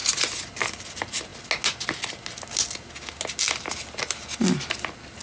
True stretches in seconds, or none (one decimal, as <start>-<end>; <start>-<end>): 0.0-5.2